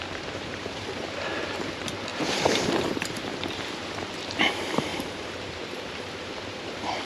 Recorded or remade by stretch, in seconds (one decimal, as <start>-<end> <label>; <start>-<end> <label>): 0.0-3.3 remade; 3.3-4.1 recorded; 4.1-7.0 remade

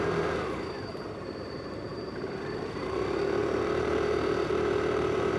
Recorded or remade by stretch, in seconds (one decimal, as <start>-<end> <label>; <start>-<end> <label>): 0.0-5.4 remade